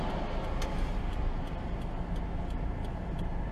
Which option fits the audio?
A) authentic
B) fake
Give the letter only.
A